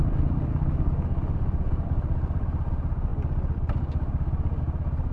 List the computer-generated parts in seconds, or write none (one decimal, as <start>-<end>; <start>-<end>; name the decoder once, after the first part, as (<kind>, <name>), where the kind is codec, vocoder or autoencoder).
none